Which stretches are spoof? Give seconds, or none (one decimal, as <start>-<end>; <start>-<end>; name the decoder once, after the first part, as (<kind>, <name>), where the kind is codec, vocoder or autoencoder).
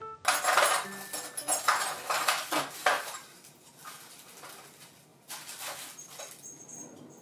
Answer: 2.8-3.7 (vocoder, BigVGAN v2)